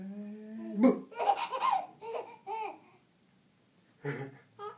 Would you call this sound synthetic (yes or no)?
no